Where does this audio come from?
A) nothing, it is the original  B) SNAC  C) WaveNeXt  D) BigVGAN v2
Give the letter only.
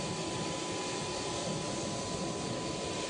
A